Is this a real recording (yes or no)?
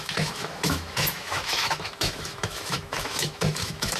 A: no